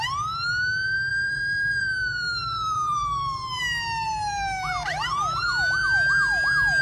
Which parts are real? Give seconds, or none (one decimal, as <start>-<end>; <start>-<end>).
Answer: 0.0-1.1; 3.6-6.8